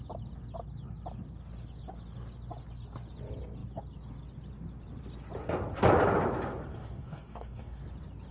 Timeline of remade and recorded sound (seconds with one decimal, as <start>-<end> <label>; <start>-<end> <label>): 0.0-6.7 recorded; 6.7-7.8 remade; 7.8-8.3 recorded